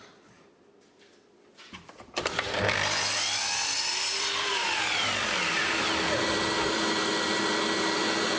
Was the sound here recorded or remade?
remade